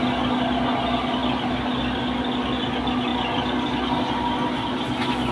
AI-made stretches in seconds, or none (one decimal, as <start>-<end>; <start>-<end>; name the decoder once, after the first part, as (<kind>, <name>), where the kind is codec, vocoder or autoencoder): none

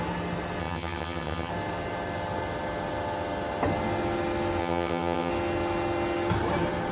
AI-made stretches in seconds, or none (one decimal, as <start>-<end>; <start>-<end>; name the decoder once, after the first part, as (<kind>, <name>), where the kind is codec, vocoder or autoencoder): 0.6-1.5 (vocoder, HiFi-GAN); 4.6-5.3

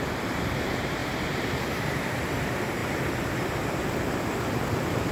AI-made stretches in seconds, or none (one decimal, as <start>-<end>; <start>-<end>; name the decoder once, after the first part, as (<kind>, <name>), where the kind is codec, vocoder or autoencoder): 0.0-5.1 (vocoder, BigVGAN v2)

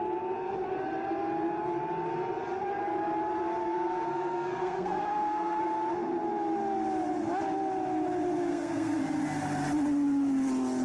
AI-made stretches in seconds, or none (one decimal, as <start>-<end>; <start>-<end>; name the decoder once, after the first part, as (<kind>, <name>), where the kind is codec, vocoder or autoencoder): 3.6-5.6 (codec, SNAC); 8.5-9.0